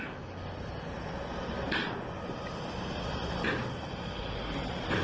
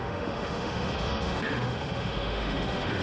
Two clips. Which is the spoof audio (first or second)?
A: second